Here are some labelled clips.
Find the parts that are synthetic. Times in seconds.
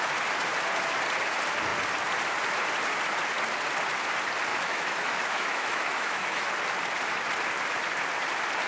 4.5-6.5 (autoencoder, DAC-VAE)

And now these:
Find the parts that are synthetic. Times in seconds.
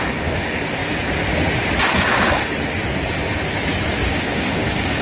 0.0-0.8 (codec, DAC); 1.9-2.5; 4.1-5.0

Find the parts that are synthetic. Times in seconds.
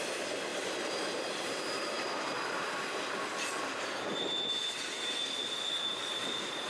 0.5-2.3 (vocoder, BigVGAN v2); 5.9-6.7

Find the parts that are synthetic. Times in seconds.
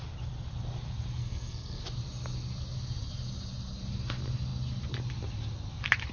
1.2-1.8 (codec, SNAC)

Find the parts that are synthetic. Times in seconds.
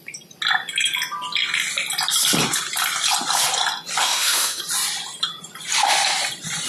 4.0-4.6 (autoencoder, DAC-VAE)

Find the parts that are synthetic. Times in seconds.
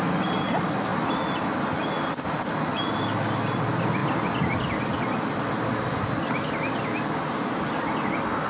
0.9-2.6 (vocoder, BigVGAN v2); 4.0-6.3